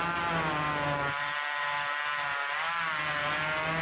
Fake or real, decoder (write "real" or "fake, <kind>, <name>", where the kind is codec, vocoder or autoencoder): real